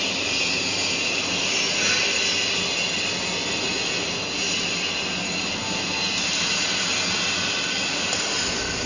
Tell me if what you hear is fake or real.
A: real